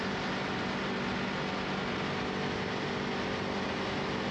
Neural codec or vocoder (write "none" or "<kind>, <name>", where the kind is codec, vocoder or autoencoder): none